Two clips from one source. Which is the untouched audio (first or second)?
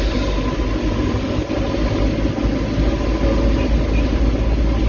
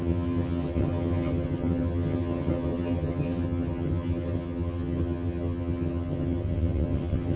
first